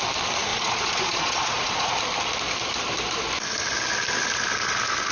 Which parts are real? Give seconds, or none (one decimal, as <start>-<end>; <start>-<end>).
0.0-0.5; 1.9-5.1